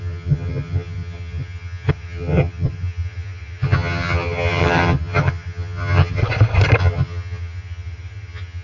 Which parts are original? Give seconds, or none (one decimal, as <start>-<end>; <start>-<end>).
6.2-6.8